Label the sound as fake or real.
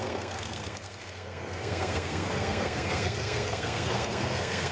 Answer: fake